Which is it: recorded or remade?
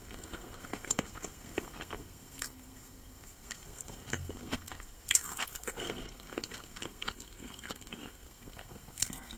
remade